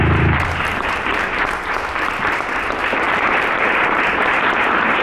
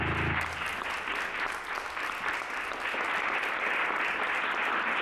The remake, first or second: first